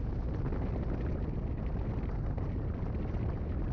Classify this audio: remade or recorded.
recorded